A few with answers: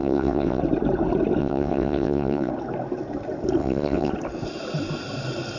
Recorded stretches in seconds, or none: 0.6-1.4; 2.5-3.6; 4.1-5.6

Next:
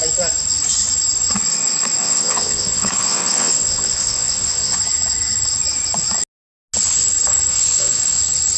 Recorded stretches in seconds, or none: 0.0-2.0; 4.8-7.5; 8.2-8.6

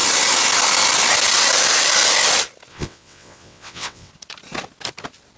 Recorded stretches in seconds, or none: 0.0-2.7; 4.1-5.4